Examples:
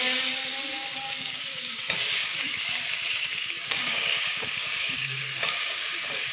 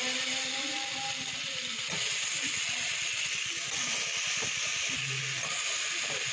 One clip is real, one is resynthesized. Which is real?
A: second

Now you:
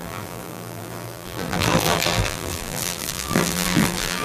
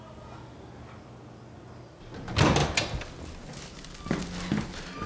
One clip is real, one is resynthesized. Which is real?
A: second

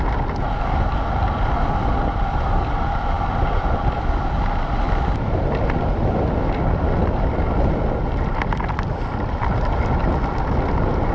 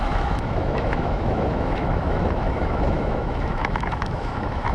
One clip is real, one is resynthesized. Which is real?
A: first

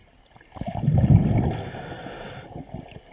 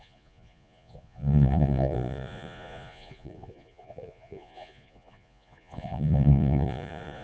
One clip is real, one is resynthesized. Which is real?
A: first